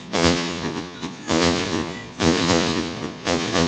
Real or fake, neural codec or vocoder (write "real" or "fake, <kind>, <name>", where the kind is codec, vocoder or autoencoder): fake, vocoder, Vocos